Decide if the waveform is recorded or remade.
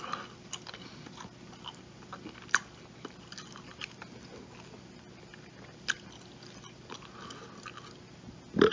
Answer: recorded